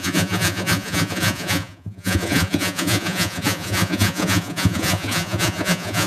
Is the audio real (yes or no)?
no